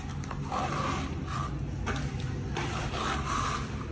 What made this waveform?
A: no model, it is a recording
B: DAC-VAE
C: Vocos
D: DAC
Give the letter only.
A